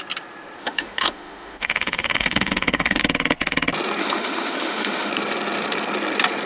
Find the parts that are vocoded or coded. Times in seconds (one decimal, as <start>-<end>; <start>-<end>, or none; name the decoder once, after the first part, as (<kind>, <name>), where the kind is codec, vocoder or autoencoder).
0.6-3.0 (autoencoder, DAC-VAE); 4.0-5.1